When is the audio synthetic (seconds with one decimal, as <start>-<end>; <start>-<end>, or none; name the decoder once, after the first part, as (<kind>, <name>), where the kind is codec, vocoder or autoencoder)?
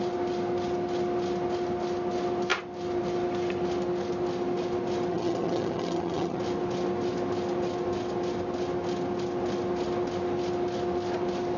5.1-6.4 (vocoder, HiFi-GAN)